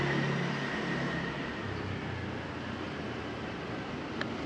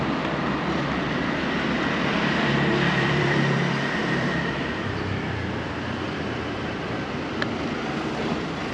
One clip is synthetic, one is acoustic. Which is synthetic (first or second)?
second